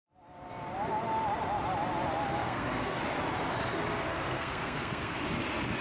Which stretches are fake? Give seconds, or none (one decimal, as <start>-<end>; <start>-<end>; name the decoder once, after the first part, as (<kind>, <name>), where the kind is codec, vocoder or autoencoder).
2.4-3.0 (codec, SNAC); 4.1-5.2